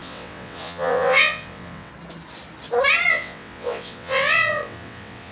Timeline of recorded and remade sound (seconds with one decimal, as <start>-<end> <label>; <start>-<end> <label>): 0.0-1.9 remade; 1.9-3.1 recorded; 3.1-5.3 remade